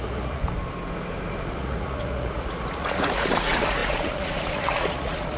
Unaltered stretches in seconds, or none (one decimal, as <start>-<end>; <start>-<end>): 0.4-1.5